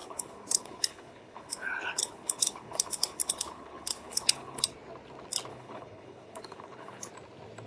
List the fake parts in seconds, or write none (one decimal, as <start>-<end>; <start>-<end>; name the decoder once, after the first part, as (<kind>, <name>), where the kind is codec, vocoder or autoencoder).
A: 0.0-4.6 (codec, HILCodec); 5.5-7.1